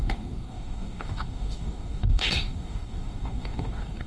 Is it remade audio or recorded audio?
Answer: remade